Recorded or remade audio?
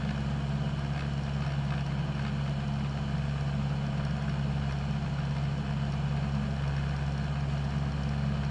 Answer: recorded